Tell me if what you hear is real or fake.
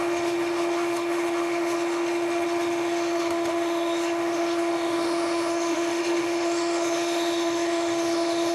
fake